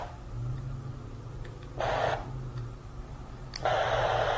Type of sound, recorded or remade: recorded